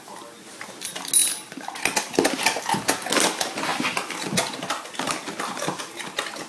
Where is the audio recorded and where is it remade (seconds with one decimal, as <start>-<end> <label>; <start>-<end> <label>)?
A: 0.0-6.5 recorded